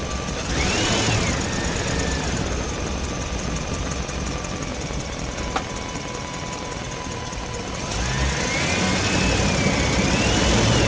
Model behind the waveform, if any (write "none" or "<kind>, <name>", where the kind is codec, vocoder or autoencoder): none